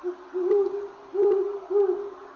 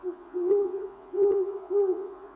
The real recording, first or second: first